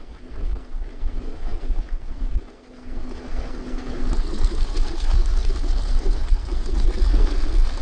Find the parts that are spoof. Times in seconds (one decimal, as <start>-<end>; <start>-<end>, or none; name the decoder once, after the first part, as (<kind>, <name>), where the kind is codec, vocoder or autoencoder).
0.0-7.8 (codec, SNAC)